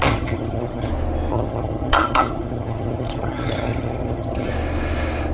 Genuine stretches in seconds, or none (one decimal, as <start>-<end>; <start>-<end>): 0.9-1.3; 4.5-5.3